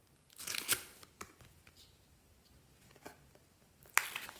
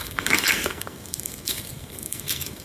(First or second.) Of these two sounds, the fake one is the second